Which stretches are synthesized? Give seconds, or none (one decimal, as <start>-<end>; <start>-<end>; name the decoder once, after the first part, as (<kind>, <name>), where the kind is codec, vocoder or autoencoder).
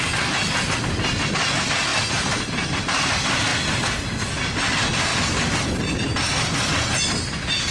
none